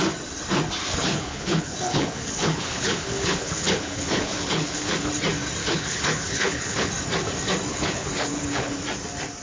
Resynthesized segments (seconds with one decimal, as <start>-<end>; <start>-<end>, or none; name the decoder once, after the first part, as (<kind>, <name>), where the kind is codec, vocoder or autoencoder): 0.9-5.1 (codec, HILCodec); 5.6-6.9; 7.7-8.8